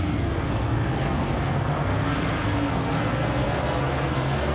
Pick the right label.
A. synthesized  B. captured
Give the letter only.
A